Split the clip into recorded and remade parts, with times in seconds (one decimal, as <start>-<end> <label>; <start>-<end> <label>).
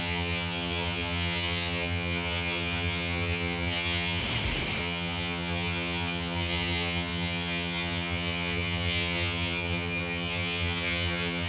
0.0-4.2 remade; 4.2-4.8 recorded; 4.8-11.5 remade